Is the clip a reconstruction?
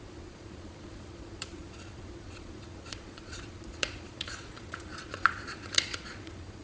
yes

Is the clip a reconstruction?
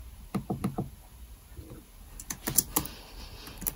no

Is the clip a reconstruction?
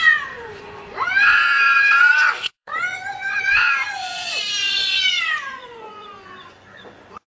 yes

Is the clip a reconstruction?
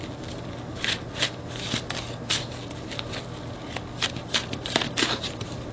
no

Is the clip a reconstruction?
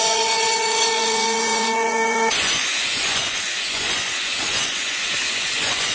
yes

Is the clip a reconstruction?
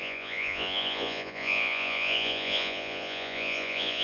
yes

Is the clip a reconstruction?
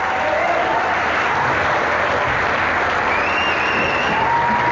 no